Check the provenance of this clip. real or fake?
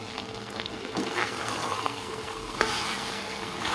fake